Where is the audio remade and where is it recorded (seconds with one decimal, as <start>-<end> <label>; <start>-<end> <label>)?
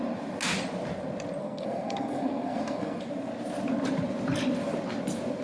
0.0-1.4 recorded; 1.4-3.0 remade; 3.0-5.4 recorded